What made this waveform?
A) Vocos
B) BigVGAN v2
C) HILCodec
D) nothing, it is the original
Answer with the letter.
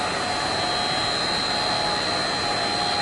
D